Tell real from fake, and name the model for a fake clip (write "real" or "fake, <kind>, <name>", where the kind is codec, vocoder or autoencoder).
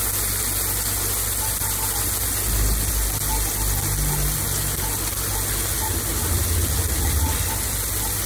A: real